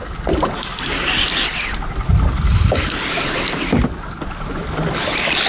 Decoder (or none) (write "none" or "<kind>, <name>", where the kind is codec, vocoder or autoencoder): none